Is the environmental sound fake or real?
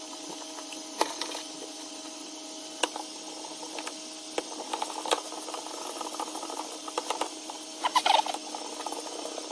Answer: real